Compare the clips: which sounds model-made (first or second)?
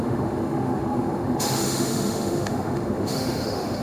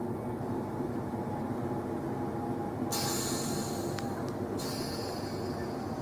first